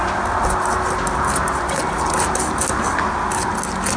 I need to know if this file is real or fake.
real